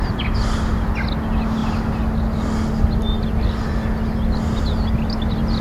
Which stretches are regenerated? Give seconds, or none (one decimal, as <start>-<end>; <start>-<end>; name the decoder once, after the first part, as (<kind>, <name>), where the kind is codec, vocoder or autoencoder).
none